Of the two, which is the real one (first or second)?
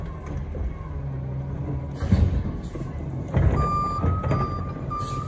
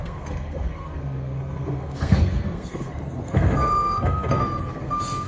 first